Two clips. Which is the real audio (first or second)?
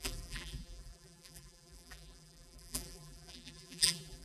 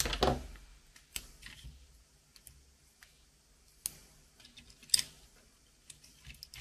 second